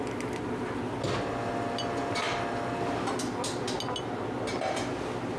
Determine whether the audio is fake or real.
real